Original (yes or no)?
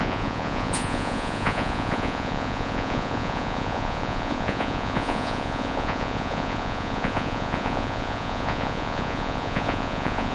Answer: no